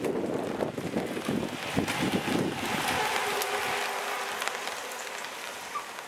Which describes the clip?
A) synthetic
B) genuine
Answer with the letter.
B